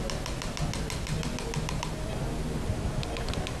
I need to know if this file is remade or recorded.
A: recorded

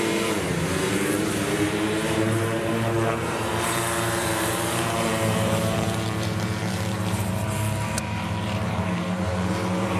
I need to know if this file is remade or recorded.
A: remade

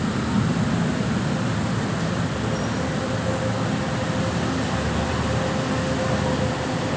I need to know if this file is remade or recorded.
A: recorded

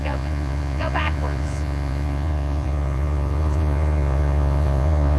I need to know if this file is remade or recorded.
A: remade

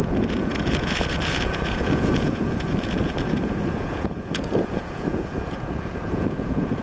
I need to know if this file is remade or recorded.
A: remade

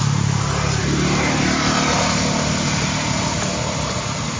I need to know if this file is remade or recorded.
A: recorded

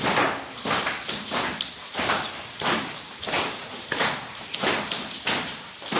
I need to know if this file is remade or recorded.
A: recorded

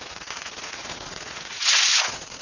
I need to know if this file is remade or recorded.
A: remade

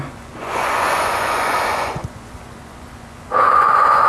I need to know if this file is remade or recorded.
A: remade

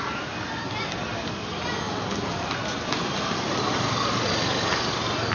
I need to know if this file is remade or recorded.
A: recorded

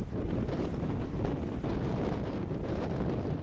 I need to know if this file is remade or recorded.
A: recorded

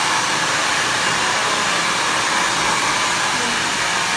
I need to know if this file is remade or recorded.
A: recorded